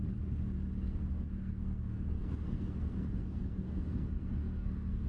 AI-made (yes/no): yes